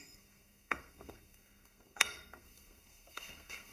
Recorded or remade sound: remade